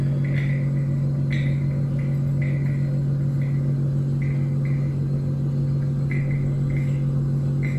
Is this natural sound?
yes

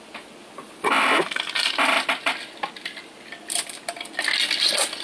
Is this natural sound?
yes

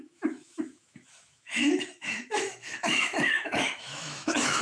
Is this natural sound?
no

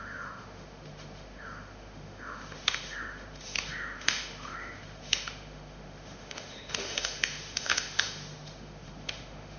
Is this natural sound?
no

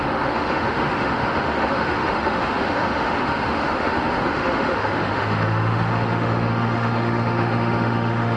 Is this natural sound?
no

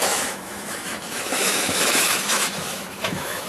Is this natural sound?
no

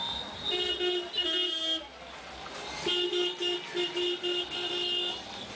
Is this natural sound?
yes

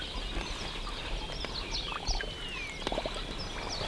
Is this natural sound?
yes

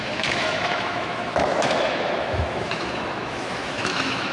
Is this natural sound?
no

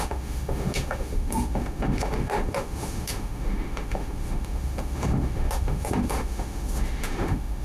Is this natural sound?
no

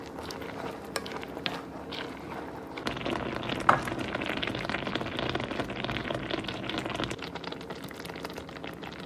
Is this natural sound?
yes